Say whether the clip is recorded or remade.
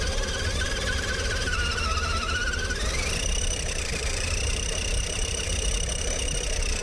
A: remade